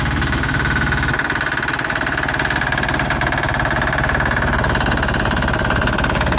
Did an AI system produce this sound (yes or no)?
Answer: no